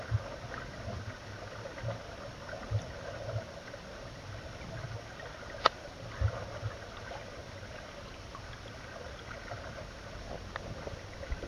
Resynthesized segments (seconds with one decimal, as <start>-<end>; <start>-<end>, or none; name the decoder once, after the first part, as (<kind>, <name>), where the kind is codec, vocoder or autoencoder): 7.4-8.1 (vocoder, BigVGAN v2)